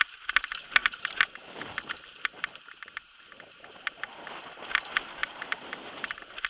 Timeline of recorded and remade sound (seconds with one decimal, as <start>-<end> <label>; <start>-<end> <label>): 0.0-0.8 recorded; 0.8-1.4 remade; 1.4-5.2 recorded; 5.2-6.0 remade; 6.0-6.5 recorded